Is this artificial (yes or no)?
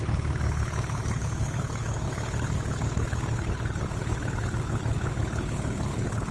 yes